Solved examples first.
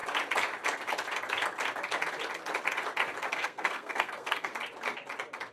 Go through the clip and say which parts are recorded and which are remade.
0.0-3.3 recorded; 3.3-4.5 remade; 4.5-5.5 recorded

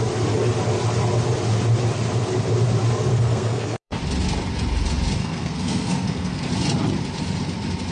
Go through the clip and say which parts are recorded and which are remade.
0.0-3.1 recorded; 3.1-4.0 remade; 4.0-5.2 recorded; 5.2-6.5 remade; 6.5-7.9 recorded

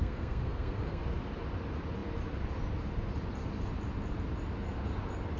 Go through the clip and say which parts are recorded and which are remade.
0.0-1.0 remade; 1.0-5.4 recorded

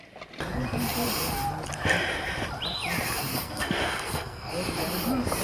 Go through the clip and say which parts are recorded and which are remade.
0.0-3.3 recorded; 3.3-4.5 remade; 4.5-5.4 recorded

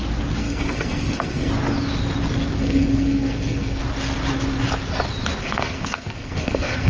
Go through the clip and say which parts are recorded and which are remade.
0.0-0.4 recorded; 0.4-1.5 remade; 1.5-2.6 recorded; 2.6-3.8 remade; 3.8-5.4 recorded; 5.4-6.9 remade

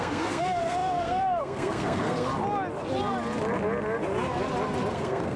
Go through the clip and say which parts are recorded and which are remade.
0.0-2.3 remade; 2.3-4.9 recorded; 4.9-5.4 remade